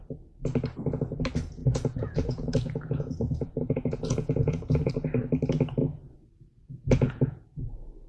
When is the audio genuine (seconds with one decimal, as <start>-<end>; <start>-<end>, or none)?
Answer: 0.0-1.6; 4.9-5.8